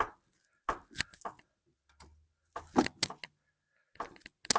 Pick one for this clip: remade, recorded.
recorded